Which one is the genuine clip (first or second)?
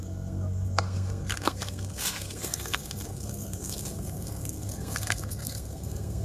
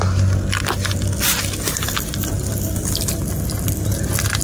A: second